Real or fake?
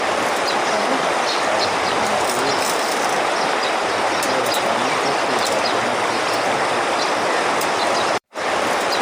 fake